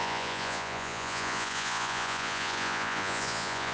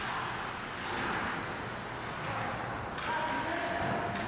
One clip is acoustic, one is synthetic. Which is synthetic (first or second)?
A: first